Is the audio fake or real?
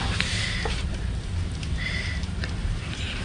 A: fake